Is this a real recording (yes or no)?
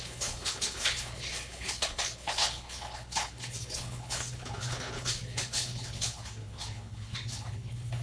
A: no